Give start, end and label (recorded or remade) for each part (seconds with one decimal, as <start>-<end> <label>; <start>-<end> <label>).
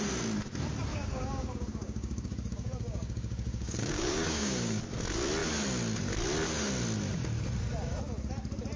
0.0-0.9 recorded; 0.9-4.8 remade; 4.8-8.8 recorded